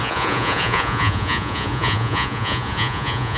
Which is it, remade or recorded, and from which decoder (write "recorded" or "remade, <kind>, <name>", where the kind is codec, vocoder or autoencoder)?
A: remade, vocoder, Vocos